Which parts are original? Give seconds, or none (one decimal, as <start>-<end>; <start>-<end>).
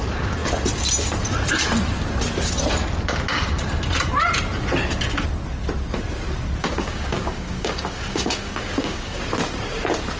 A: 0.0-6.6; 9.2-10.2